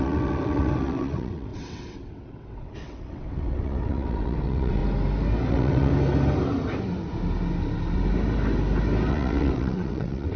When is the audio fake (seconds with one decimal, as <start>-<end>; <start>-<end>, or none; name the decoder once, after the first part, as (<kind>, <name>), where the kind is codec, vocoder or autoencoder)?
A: 0.0-4.8 (vocoder, WaveNeXt); 5.5-5.9; 9.1-10.4